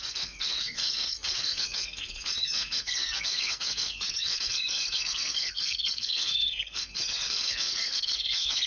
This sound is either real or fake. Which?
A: fake